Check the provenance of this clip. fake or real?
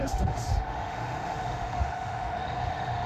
fake